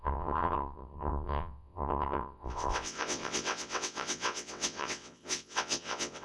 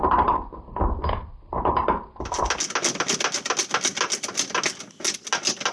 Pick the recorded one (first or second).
second